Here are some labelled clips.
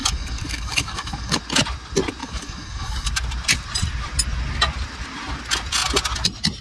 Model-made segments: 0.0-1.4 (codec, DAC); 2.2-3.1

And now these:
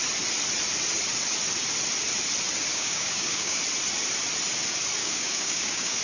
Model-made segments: 2.7-3.6 (codec, DAC); 5.0-6.0